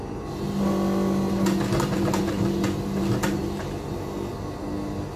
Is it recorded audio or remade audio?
recorded